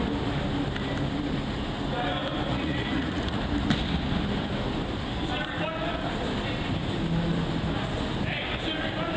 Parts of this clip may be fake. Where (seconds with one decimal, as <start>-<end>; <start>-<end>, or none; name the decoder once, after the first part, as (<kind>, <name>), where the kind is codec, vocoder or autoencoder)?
2.5-3.4 (vocoder, Vocos)